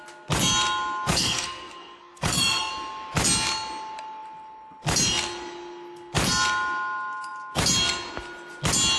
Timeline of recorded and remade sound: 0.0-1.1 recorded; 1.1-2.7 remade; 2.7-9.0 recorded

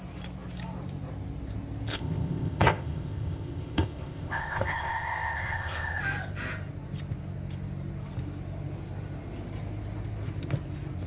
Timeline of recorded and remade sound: 0.0-1.9 recorded; 1.9-6.0 remade; 6.0-11.1 recorded

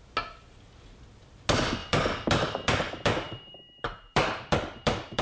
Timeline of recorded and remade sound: 0.0-1.8 recorded; 1.8-5.2 remade

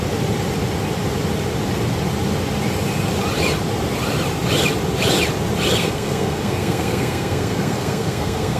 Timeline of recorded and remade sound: 0.0-5.8 recorded; 5.8-8.6 remade